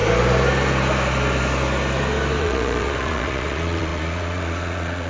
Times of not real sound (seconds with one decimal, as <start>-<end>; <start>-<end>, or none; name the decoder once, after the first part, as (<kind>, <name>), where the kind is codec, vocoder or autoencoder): 2.4-5.1 (vocoder, Vocos)